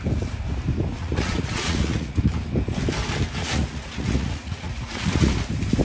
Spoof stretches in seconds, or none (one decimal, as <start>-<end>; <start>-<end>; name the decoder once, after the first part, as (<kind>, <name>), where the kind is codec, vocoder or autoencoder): 1.0-2.2 (vocoder, Vocos); 3.4-5.3

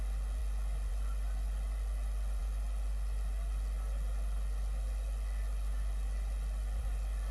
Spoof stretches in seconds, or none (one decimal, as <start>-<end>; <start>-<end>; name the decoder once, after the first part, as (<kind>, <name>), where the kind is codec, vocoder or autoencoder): none

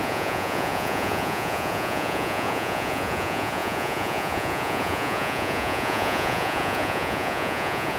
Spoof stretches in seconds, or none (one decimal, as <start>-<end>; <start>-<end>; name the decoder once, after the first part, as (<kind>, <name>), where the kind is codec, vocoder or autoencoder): 0.0-8.0 (vocoder, Vocos)

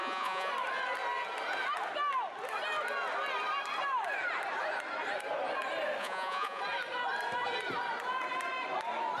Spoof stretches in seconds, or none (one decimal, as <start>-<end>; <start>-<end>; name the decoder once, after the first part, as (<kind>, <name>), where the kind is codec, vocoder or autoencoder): 0.0-0.5 (vocoder, Vocos); 6.0-6.6

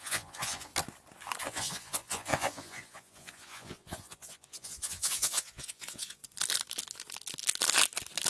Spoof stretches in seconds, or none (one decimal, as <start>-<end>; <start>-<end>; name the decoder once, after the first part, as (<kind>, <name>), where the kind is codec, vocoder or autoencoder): 0.0-0.7 (vocoder, Vocos); 1.4-6.2

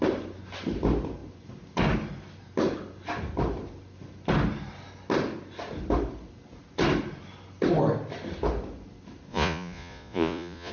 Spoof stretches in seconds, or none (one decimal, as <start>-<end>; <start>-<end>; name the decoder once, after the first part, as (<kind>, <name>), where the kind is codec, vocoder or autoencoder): 9.3-10.7 (vocoder, Vocos)

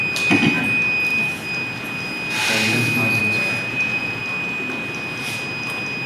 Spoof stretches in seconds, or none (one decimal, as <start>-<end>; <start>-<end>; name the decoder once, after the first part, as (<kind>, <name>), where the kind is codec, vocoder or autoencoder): 3.7-4.2 (vocoder, Vocos)

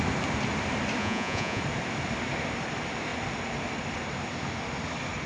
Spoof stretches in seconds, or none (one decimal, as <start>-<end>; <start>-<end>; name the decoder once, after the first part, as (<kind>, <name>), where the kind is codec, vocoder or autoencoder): 1.0-1.6 (vocoder, Vocos)